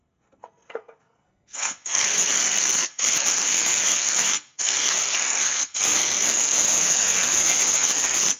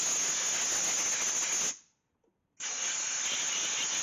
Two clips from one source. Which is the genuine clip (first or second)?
second